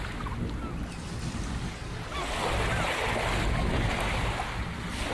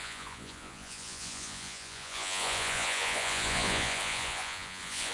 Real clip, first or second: first